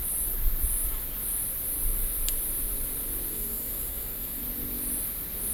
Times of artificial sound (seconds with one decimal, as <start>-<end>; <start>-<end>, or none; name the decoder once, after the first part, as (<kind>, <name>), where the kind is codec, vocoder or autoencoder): 3.3-4.4 (codec, DAC)